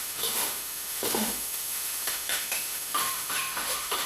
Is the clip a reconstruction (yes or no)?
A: yes